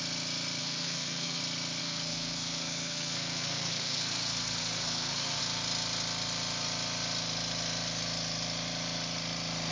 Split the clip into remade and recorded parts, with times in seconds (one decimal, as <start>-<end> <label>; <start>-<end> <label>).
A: 0.0-0.6 recorded; 0.6-1.4 remade; 1.4-1.8 recorded; 1.8-5.4 remade; 5.4-9.7 recorded